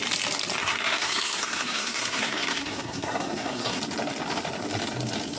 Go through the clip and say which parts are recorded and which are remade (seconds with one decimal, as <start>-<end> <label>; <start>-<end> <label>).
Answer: 0.0-0.6 recorded; 0.6-3.8 remade; 3.8-5.4 recorded